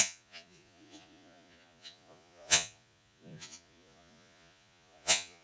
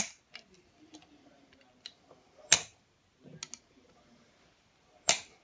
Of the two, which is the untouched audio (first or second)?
second